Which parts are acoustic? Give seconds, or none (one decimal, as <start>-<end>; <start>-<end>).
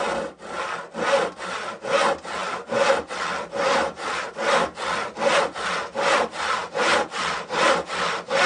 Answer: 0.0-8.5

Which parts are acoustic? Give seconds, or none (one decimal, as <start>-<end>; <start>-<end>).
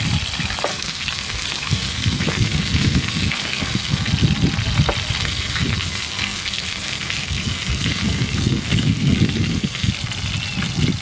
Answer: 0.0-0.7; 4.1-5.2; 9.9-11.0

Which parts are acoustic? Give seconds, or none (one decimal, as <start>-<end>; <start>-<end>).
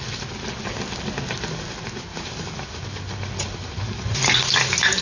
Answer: 0.0-2.1; 2.8-3.6; 4.4-5.0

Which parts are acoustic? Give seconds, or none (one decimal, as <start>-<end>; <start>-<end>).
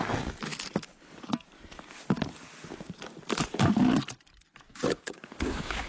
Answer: 0.0-4.7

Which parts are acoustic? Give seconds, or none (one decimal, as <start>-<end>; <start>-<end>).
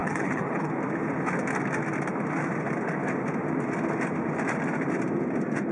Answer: 0.7-5.7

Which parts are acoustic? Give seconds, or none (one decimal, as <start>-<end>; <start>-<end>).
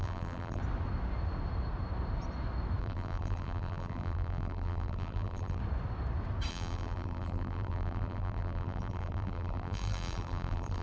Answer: 0.6-2.8; 5.6-6.5